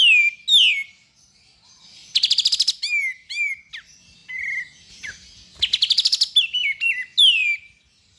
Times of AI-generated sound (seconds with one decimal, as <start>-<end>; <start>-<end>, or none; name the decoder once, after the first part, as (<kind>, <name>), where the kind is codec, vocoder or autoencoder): none